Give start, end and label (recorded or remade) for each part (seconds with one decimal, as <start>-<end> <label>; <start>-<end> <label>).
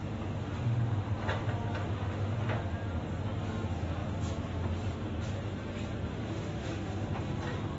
0.0-0.4 recorded; 0.4-1.1 remade; 1.1-1.9 recorded; 1.9-2.4 remade; 2.4-6.1 recorded; 6.1-7.2 remade; 7.2-7.8 recorded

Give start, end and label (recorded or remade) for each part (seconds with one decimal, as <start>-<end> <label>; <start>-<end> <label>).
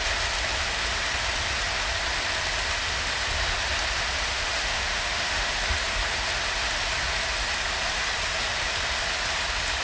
0.0-4.3 recorded; 4.3-5.6 remade; 5.6-9.8 recorded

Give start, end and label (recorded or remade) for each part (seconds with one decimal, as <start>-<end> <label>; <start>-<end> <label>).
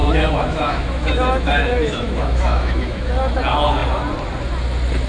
0.0-3.1 remade; 3.1-5.1 recorded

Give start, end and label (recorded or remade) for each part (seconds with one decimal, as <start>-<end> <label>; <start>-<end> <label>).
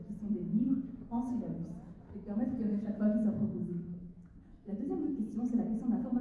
0.0-2.7 recorded; 2.7-4.8 remade; 4.8-6.2 recorded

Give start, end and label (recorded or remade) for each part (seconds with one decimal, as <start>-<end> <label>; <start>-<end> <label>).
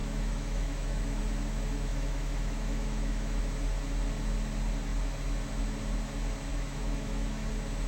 0.0-1.2 remade; 1.2-1.9 recorded; 1.9-3.4 remade; 3.4-6.5 recorded; 6.5-7.5 remade; 7.5-7.9 recorded